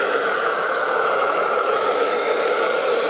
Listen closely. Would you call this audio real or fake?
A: fake